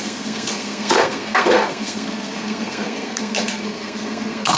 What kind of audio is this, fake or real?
fake